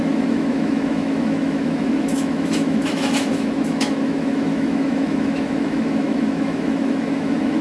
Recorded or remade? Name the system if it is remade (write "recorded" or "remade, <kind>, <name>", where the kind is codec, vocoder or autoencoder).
remade, autoencoder, DAC-VAE